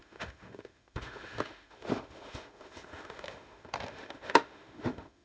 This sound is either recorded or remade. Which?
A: remade